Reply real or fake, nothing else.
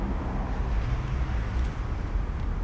real